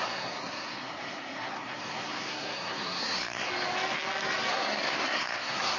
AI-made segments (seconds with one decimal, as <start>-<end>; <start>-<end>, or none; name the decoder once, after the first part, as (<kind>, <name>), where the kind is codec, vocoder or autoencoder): 0.0-3.5 (codec, SNAC); 4.5-5.8